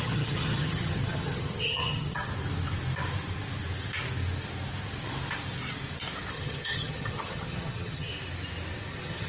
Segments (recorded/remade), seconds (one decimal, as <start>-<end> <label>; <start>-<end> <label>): 0.0-2.3 remade; 2.3-6.3 recorded; 6.3-8.1 remade; 8.1-8.9 recorded; 8.9-9.3 remade